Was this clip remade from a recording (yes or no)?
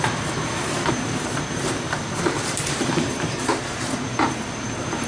yes